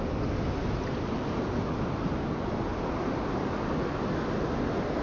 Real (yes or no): yes